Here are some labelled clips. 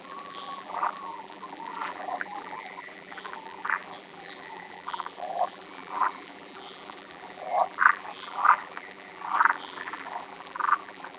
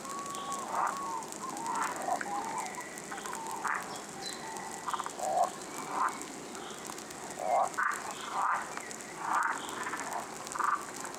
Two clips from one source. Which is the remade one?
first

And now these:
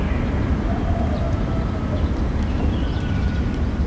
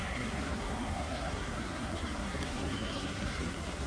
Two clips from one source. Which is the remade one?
second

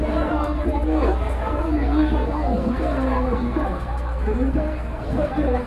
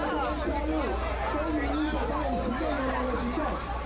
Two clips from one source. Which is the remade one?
first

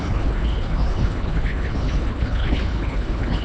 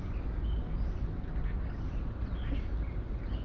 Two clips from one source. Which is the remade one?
first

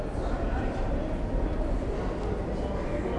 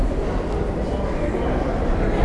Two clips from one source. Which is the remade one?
second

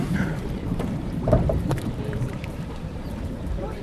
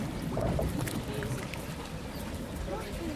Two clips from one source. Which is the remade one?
first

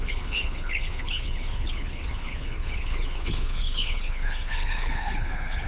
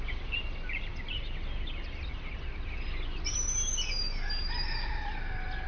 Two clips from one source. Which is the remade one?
first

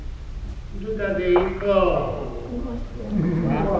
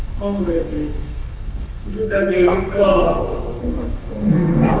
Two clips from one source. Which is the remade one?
second